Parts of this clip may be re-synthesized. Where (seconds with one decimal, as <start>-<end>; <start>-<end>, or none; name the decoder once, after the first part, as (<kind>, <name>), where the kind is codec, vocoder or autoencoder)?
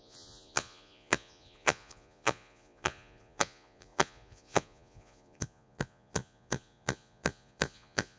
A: 0.0-8.2 (vocoder, Vocos)